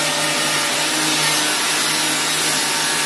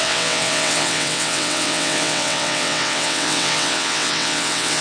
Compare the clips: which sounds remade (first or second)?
second